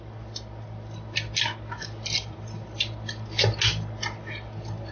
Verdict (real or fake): real